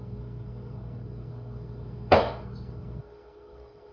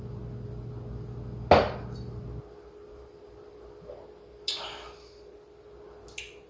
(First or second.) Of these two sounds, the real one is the second